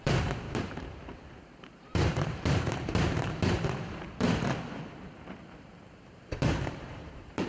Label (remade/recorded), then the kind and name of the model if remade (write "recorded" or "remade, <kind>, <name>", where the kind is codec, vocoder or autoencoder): remade, vocoder, BigVGAN v2